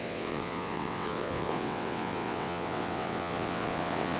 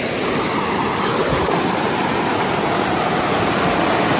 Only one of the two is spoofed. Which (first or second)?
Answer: first